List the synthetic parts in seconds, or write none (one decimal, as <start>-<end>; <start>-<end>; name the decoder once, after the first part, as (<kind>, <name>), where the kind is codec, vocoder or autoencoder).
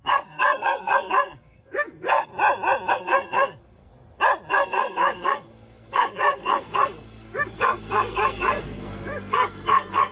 0.0-2.3 (codec, SNAC); 2.9-3.9; 4.5-10.1